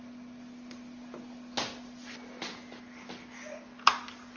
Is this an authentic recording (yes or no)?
yes